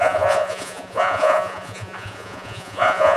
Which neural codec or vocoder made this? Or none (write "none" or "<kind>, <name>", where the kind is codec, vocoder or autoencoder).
vocoder, Vocos